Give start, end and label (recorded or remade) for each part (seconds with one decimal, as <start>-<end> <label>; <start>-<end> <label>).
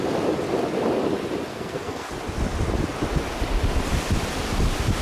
0.0-1.5 recorded; 1.5-2.1 remade; 2.1-5.0 recorded